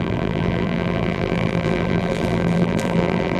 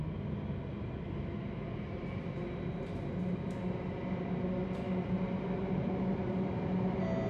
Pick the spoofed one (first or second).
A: first